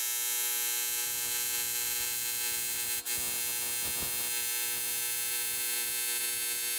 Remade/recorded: recorded